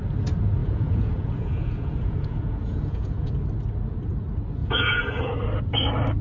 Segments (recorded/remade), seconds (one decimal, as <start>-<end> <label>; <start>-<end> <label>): 0.0-0.6 recorded; 0.6-3.3 remade; 3.3-4.6 recorded; 4.6-5.2 remade; 5.2-6.2 recorded